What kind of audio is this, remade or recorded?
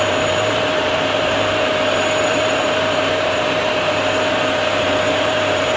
remade